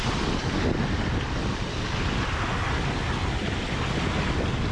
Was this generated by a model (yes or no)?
no